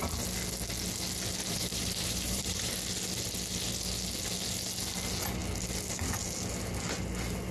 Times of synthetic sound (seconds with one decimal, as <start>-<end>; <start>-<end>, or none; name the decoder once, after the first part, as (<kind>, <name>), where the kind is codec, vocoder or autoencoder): 1.4-2.7 (vocoder, BigVGAN v2)